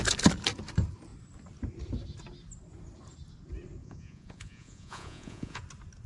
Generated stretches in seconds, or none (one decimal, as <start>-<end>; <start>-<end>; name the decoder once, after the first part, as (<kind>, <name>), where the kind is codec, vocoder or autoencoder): 3.8-5.6 (vocoder, Vocos)

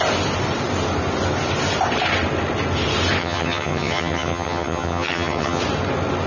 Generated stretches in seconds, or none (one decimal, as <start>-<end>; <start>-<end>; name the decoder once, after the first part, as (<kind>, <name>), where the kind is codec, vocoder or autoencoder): 3.2-5.6 (vocoder, HiFi-GAN)